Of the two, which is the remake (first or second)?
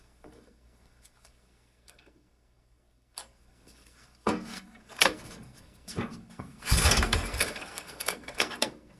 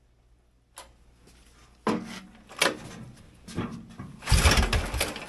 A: first